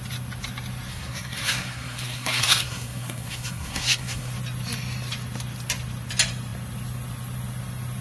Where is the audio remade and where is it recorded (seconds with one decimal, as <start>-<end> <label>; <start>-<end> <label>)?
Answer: 0.0-0.9 recorded; 0.9-4.3 remade; 4.3-8.0 recorded